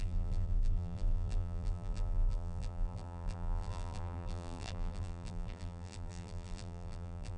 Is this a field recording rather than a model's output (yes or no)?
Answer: no